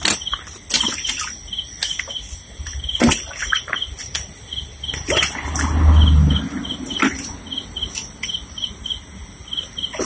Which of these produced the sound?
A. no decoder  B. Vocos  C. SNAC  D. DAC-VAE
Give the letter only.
A